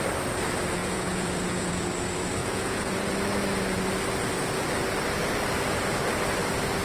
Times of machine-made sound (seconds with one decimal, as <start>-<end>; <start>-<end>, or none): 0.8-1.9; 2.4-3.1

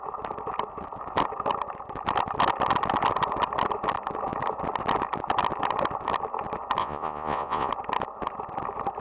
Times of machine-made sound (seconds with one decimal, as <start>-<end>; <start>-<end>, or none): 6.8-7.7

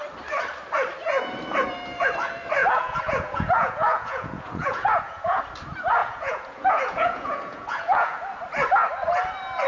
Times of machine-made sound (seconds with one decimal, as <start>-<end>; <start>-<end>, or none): 2.6-5.4; 6.0-8.2

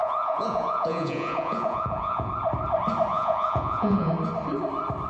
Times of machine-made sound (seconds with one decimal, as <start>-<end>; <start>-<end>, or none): 0.0-2.3; 3.1-4.1

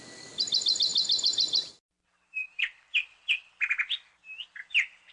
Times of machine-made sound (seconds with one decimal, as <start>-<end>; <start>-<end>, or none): none

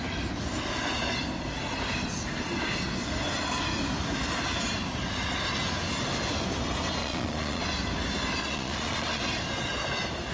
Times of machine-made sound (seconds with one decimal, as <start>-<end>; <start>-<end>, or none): 7.0-7.6; 8.4-9.2

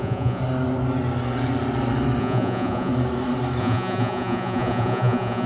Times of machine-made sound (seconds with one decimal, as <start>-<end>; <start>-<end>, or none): 0.0-0.4; 2.2-2.9; 3.6-5.5

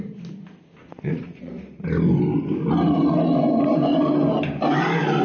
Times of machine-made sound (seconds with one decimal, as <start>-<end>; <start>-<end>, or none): 0.8-1.5